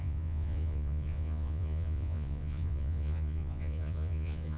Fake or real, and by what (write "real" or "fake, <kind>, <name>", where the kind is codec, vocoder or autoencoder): fake, vocoder, Vocos